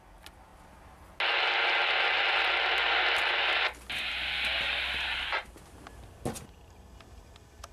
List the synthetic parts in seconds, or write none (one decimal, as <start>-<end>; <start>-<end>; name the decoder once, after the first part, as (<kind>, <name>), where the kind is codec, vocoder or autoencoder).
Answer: none